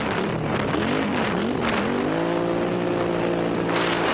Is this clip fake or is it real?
real